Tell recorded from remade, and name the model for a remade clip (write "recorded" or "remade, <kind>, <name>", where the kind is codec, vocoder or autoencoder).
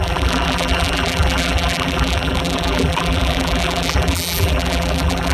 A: remade, vocoder, BigVGAN v2